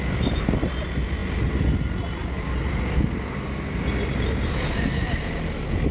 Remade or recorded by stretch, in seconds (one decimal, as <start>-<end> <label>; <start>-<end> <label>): 0.0-5.9 recorded